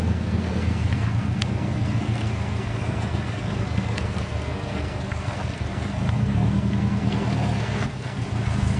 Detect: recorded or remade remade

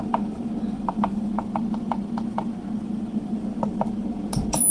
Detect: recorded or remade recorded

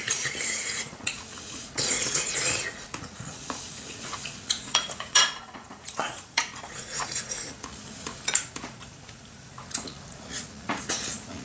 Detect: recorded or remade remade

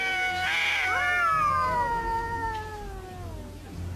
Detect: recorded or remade recorded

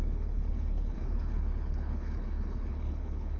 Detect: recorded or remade remade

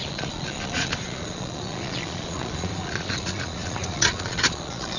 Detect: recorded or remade remade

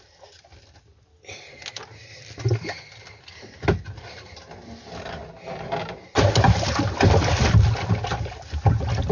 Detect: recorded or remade recorded